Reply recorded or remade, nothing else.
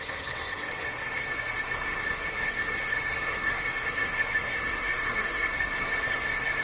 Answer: remade